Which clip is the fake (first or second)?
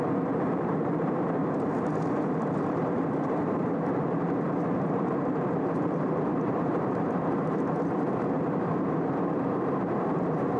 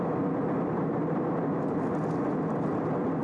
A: first